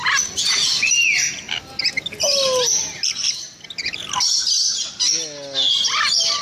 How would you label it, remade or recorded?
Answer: recorded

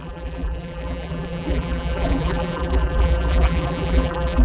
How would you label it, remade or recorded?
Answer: remade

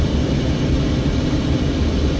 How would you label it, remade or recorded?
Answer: remade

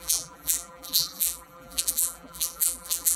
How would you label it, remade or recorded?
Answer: remade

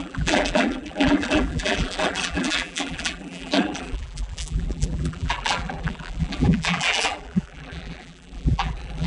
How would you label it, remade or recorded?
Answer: remade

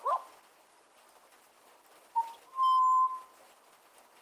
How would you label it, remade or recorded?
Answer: recorded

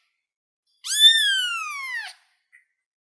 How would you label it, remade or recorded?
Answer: recorded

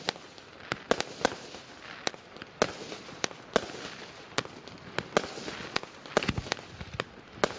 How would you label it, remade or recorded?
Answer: recorded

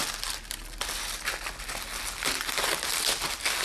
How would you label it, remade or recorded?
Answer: recorded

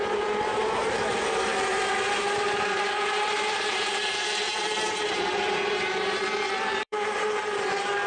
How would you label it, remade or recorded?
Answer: remade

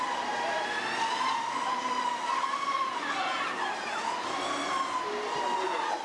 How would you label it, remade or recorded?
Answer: recorded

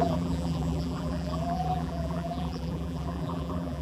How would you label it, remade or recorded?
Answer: remade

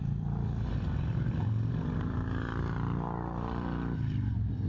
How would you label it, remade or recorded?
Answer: remade